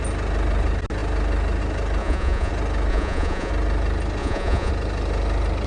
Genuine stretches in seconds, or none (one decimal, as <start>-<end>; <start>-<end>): 0.0-2.0; 2.5-2.9; 3.5-4.2; 4.7-5.7